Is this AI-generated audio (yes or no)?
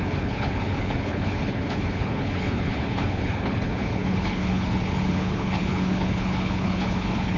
yes